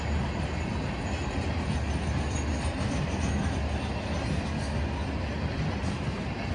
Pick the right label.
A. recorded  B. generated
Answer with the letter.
A